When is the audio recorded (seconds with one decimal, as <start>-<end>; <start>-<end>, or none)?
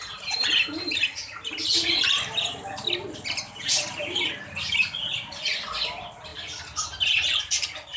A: 0.0-8.0